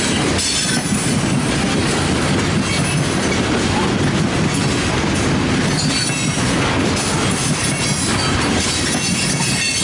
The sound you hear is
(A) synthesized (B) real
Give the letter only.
B